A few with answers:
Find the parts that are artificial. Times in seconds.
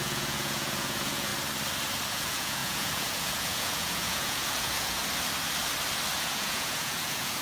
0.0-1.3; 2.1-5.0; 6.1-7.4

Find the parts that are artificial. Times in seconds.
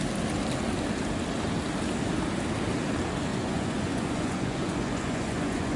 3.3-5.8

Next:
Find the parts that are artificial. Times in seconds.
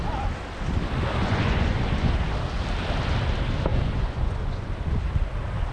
1.2-2.2; 3.7-4.7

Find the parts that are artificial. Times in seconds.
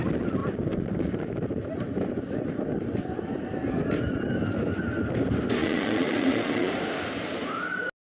5.6-6.7